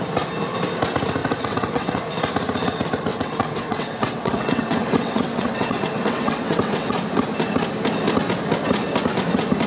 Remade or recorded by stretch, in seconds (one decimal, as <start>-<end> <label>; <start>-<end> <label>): 0.0-1.2 recorded; 1.2-2.0 remade; 2.0-3.1 recorded; 3.1-7.0 remade; 7.0-9.7 recorded